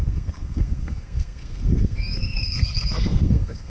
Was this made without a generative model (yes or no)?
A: no